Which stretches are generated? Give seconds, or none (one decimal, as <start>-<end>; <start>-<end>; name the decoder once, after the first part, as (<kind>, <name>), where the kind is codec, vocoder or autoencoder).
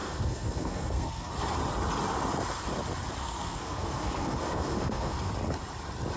0.0-1.3 (codec, SNAC); 3.2-5.3